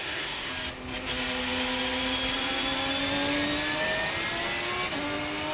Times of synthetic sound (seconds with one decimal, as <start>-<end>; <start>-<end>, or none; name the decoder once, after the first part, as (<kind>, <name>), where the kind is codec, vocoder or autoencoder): 0.0-0.5 (codec, SNAC)